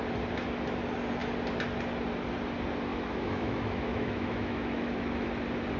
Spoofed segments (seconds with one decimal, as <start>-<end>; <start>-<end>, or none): 2.9-5.3